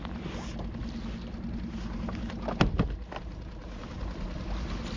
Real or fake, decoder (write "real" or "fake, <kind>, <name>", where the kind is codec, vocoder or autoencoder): real